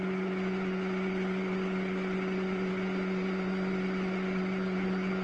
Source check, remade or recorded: remade